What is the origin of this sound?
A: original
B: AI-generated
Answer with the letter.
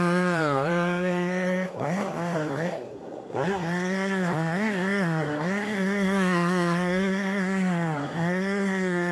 B